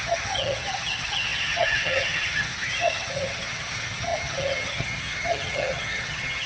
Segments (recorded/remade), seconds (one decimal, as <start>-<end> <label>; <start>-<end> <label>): 0.0-6.5 remade